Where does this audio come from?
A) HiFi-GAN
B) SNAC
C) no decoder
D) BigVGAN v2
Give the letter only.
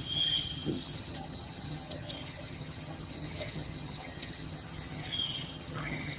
A